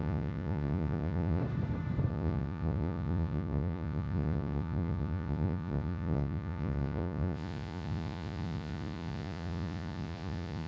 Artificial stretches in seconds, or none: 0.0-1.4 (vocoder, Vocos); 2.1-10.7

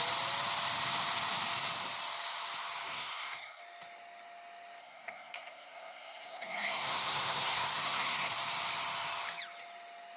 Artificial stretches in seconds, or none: 2.9-3.6 (codec, SNAC); 4.8-8.3